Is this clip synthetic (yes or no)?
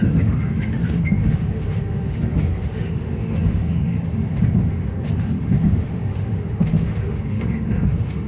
yes